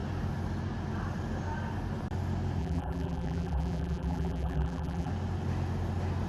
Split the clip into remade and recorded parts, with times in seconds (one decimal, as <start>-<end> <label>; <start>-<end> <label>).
0.0-2.6 recorded; 2.6-5.1 remade; 5.1-6.3 recorded